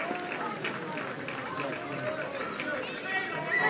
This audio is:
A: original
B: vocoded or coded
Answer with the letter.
A